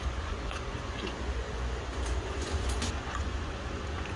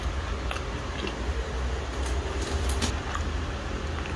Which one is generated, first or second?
first